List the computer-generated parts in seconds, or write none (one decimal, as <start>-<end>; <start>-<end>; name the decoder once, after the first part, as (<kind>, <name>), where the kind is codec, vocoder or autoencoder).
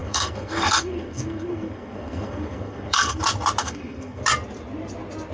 0.0-3.2 (codec, SNAC); 3.6-4.2